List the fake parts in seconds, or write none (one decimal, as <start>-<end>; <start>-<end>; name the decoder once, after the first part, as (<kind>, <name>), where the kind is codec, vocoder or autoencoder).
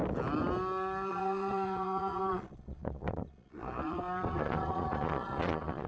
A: 1.1-5.9 (vocoder, Vocos)